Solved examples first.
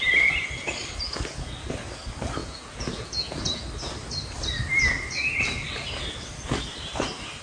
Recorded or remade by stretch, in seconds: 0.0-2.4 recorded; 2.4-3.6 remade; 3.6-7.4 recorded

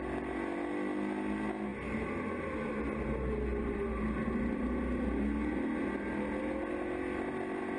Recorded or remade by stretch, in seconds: 0.0-7.8 recorded

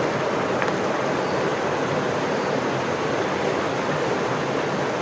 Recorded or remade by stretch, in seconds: 0.0-5.0 recorded

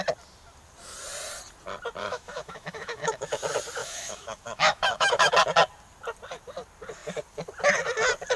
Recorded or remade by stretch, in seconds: 0.0-2.0 recorded; 2.0-3.4 remade; 3.4-3.8 recorded; 3.8-5.3 remade; 5.3-8.4 recorded

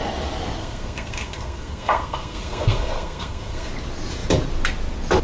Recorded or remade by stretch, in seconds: 0.0-0.6 recorded; 0.6-3.7 remade; 3.7-5.2 recorded

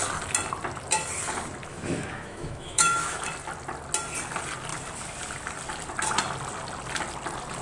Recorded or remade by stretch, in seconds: 0.0-1.7 recorded; 1.7-3.2 remade; 3.2-7.6 recorded